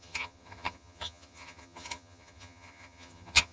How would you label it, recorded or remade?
remade